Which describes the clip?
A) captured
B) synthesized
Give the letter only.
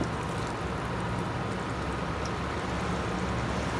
A